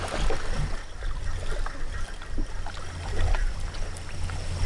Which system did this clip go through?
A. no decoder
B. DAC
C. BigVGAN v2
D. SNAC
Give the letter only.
A